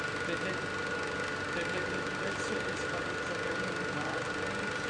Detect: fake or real real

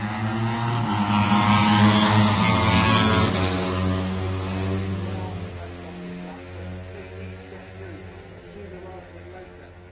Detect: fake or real real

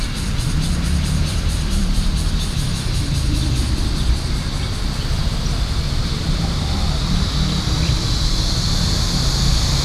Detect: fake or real fake